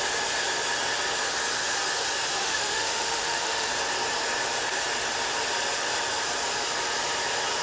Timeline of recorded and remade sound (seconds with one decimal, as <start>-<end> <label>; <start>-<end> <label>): 0.0-2.4 recorded; 2.4-3.7 remade; 3.7-7.6 recorded